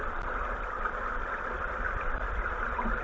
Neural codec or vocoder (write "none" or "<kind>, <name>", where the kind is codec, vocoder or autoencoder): vocoder, BigVGAN v2